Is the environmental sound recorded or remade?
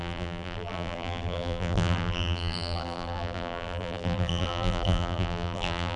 remade